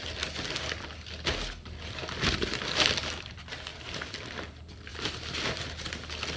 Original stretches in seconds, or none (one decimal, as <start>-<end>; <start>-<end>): 0.0-3.7; 4.4-6.4